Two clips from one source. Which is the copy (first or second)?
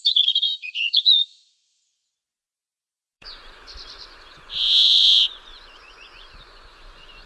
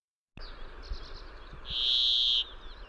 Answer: first